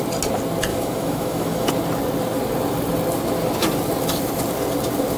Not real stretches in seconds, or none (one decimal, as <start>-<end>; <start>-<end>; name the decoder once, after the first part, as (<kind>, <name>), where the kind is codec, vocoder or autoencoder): 0.7-1.7 (autoencoder, DAC-VAE)